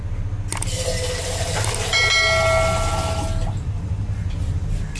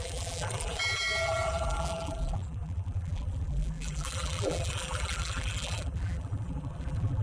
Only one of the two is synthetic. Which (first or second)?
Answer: second